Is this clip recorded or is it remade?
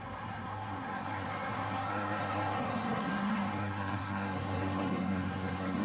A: remade